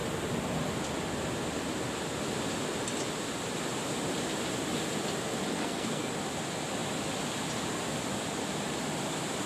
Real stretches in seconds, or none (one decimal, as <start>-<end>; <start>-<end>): 0.0-5.5; 6.1-9.5

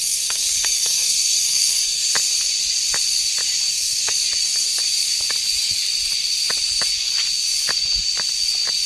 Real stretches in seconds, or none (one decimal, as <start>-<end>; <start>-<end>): 2.1-3.7; 4.2-8.9

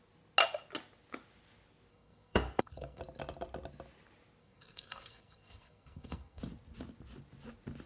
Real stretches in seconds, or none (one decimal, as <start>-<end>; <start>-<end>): 0.0-1.9; 3.0-4.4; 6.4-7.9

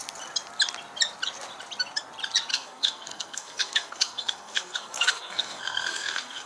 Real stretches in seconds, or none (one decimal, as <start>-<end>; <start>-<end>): 0.0-2.5

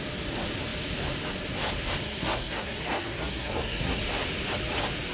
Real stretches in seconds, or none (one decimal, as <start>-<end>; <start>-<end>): 0.0-2.0; 4.0-5.1

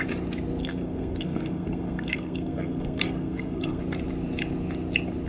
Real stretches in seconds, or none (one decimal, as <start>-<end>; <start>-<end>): 0.0-0.6; 3.8-5.3

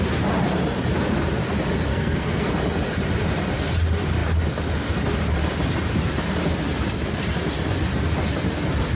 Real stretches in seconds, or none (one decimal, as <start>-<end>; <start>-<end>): 0.0-1.9; 2.5-9.0